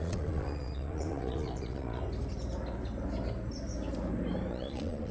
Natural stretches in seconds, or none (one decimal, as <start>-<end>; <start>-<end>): 2.0-4.5